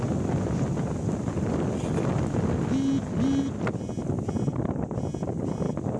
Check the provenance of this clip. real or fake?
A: real